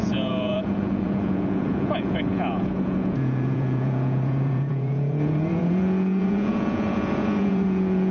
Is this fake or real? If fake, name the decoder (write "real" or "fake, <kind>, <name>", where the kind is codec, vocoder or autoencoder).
fake, vocoder, Vocos